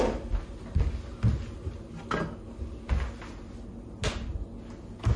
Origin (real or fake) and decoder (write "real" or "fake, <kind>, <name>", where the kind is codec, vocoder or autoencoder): real